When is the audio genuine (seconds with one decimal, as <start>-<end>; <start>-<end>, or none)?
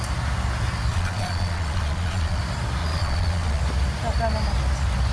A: 0.0-0.9; 2.4-2.8; 3.6-5.1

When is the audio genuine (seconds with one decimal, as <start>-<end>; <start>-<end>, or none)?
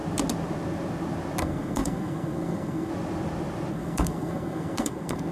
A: 0.0-1.4; 2.9-3.7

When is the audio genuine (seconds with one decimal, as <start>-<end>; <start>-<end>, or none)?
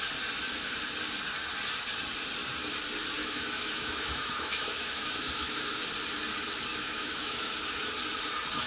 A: 0.0-3.2; 5.8-6.7; 7.5-8.7